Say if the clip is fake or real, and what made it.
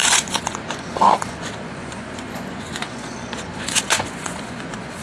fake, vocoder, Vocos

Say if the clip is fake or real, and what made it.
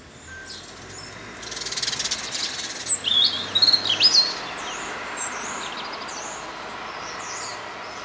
real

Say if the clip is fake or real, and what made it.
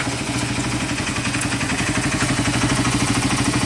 fake, vocoder, Vocos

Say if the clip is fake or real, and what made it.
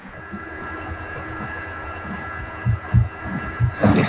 fake, vocoder, Vocos